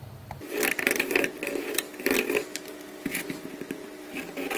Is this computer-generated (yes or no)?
no